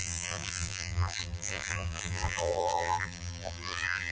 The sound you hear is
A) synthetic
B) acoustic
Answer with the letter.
A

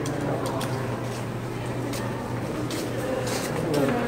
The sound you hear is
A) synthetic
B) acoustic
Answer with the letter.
B